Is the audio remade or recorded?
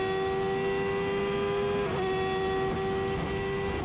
recorded